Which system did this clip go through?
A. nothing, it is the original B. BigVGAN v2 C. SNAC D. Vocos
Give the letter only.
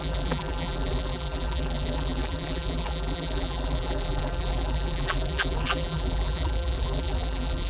B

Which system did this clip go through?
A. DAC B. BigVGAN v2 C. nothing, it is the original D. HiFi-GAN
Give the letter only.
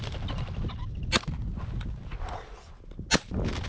C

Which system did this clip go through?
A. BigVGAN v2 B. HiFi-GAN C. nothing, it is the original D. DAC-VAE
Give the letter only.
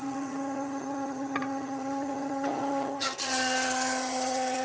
B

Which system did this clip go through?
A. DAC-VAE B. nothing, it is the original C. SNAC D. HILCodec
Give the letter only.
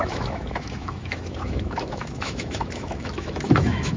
A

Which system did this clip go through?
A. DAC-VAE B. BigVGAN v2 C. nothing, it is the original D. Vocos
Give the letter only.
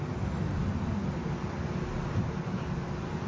C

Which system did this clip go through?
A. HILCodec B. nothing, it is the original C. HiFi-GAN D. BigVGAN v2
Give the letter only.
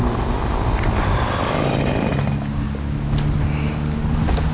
B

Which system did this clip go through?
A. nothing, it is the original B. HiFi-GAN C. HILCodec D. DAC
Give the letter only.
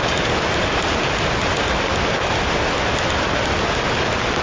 A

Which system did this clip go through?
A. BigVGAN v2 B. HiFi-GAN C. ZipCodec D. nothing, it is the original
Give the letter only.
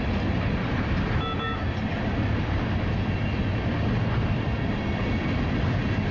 D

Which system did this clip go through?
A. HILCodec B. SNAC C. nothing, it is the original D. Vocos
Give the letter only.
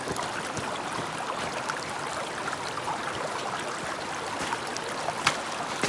C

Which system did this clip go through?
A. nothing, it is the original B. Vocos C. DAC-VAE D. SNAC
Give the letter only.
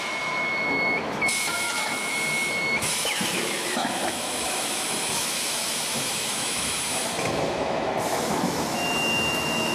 C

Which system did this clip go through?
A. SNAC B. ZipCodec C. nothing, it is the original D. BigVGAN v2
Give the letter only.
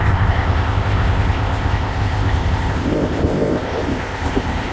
B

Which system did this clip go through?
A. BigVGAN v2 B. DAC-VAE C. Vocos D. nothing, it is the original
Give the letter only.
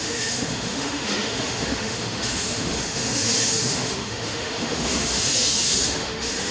B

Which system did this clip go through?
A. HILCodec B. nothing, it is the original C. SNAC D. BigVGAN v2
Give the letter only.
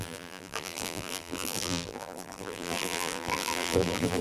D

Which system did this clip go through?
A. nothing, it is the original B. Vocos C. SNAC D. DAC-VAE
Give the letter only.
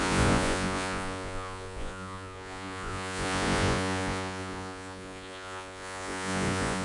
B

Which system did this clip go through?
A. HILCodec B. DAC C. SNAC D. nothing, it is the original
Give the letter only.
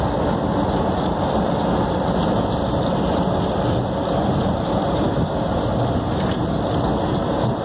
D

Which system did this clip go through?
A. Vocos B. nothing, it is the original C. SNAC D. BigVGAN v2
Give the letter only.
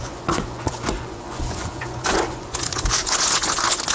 A